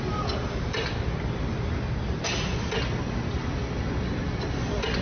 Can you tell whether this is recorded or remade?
recorded